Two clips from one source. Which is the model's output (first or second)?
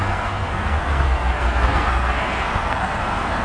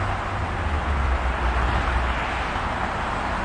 first